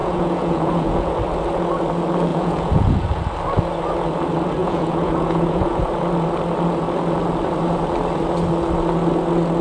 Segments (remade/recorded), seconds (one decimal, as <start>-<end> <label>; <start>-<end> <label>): 0.0-1.1 remade; 1.1-2.3 recorded; 2.3-3.2 remade; 3.2-4.6 recorded; 4.6-5.9 remade; 5.9-9.6 recorded

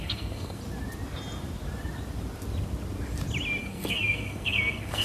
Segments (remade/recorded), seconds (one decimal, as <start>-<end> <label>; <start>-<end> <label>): 0.0-0.6 remade; 0.6-3.6 recorded; 3.6-5.0 remade

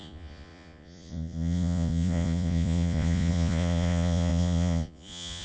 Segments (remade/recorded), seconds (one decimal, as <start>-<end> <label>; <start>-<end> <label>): 0.0-5.4 remade

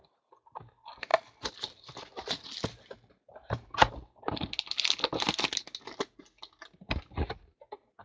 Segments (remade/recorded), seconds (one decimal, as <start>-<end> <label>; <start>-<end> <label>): 0.0-8.0 recorded

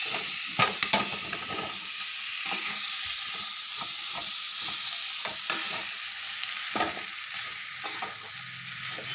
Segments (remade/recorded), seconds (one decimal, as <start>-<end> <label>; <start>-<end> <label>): 0.0-9.1 recorded